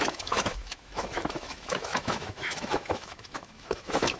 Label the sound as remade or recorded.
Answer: remade